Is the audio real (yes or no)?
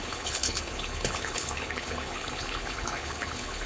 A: no